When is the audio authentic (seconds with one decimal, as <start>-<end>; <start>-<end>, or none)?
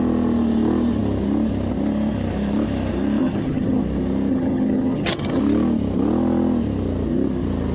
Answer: 0.0-3.2; 3.8-4.3; 5.4-7.7